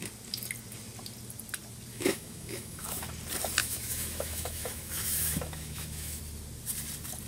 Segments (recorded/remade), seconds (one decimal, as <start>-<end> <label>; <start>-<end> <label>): 0.0-1.9 recorded; 1.9-3.0 remade; 3.0-3.6 recorded; 3.6-6.2 remade; 6.2-7.3 recorded